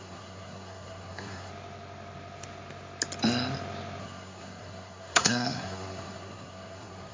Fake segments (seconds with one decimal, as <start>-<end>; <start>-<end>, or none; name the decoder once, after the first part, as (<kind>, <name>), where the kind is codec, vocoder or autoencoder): 0.0-1.5 (codec, SNAC); 4.0-7.1